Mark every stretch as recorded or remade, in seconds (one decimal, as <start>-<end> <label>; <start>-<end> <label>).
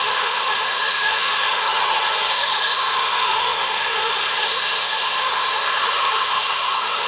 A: 0.0-1.7 remade; 1.7-2.3 recorded; 2.3-7.1 remade